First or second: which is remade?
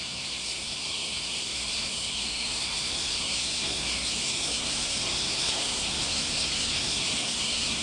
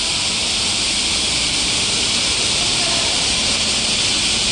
first